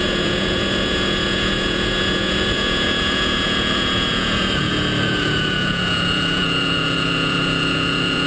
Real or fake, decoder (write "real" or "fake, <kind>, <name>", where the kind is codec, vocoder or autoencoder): fake, vocoder, Vocos